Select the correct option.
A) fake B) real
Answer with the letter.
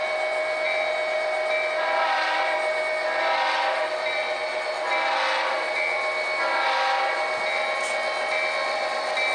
B